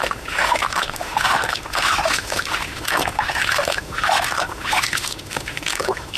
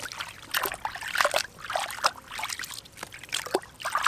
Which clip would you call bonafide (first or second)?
second